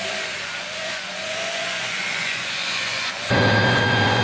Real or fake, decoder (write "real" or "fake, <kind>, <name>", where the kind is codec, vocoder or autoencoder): fake, vocoder, Vocos